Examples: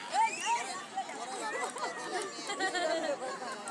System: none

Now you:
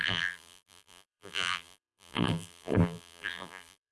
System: vocoder, BigVGAN v2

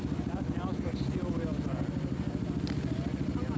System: none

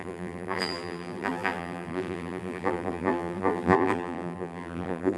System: vocoder, BigVGAN v2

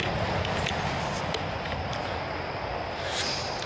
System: none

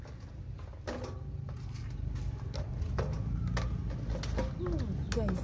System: none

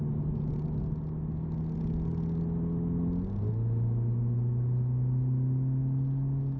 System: none